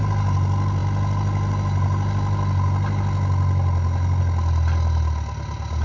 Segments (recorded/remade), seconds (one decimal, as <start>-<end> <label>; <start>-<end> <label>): 0.0-5.8 recorded